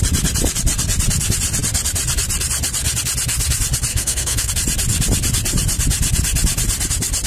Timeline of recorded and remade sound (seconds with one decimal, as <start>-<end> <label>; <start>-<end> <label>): 0.0-3.9 recorded; 3.9-4.5 remade; 4.5-7.3 recorded